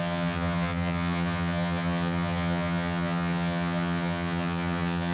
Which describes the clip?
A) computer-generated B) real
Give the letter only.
A